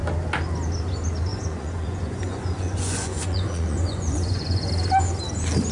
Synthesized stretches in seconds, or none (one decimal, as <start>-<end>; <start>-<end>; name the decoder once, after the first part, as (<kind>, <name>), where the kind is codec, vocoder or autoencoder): 1.3-4.7 (vocoder, Vocos)